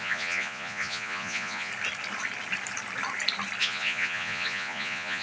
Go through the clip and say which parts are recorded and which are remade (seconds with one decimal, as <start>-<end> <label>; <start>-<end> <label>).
0.0-1.7 remade; 1.7-3.6 recorded; 3.6-5.2 remade